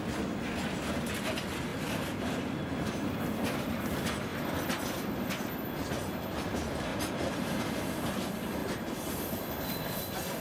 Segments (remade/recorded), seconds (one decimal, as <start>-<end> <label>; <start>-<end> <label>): 0.0-1.7 recorded; 1.7-3.2 remade; 3.2-4.3 recorded; 4.3-5.3 remade; 5.3-6.9 recorded; 6.9-7.6 remade; 7.6-8.6 recorded; 8.6-10.0 remade; 10.0-10.4 recorded